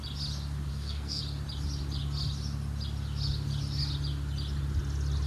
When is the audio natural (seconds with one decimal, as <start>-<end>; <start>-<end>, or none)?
0.0-0.7; 1.2-5.3